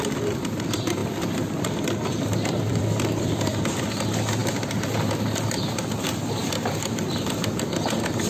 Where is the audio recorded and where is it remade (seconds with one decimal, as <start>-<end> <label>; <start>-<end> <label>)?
0.0-1.0 recorded; 1.0-3.6 remade; 3.6-4.4 recorded; 4.4-5.1 remade; 5.1-6.4 recorded; 6.4-7.3 remade; 7.3-8.3 recorded